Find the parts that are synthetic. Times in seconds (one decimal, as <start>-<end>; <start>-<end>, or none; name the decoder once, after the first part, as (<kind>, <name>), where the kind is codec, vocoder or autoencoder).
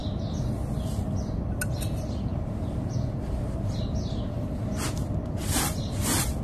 none